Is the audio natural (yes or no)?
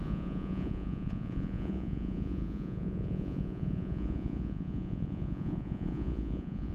no